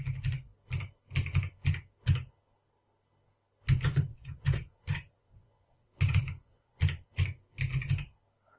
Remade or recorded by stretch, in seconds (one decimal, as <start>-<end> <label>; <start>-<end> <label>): 0.0-4.1 recorded; 4.1-6.8 remade; 6.8-8.6 recorded